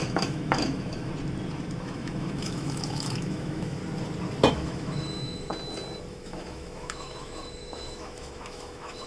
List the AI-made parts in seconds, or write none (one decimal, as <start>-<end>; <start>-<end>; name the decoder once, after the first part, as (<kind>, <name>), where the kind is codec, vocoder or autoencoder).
0.0-1.1 (autoencoder, DAC-VAE); 1.8-3.8; 4.5-5.5; 6.1-9.1